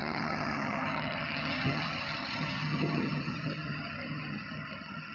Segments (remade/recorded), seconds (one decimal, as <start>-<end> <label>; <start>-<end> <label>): 0.0-5.1 remade